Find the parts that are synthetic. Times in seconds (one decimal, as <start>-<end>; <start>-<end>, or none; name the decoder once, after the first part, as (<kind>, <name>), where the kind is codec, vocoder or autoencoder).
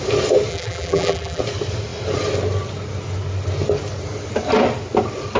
0.5-1.4 (vocoder, BigVGAN v2)